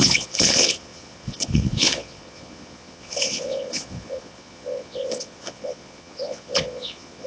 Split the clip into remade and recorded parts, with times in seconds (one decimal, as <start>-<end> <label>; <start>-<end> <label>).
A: 0.0-7.3 remade